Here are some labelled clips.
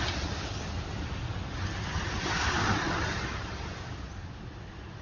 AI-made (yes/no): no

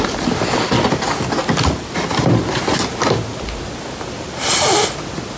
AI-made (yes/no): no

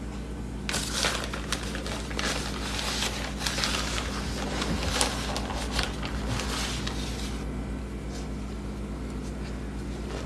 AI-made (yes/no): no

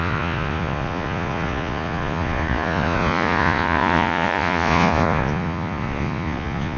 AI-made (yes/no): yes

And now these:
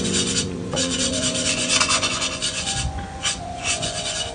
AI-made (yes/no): yes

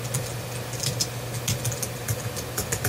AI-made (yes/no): no